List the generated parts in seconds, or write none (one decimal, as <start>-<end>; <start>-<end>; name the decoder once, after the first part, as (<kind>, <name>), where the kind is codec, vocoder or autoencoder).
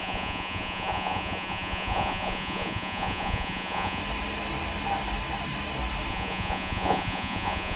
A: 0.0-4.0 (vocoder, Vocos); 6.1-7.8